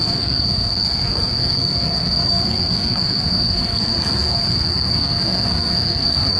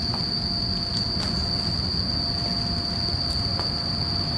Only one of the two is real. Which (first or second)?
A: second